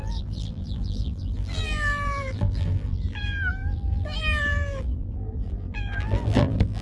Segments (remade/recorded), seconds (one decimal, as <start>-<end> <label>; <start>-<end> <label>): 0.0-6.8 remade